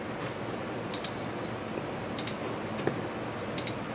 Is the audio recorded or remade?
recorded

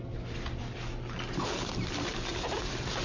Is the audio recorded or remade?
recorded